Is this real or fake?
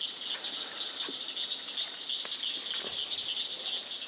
real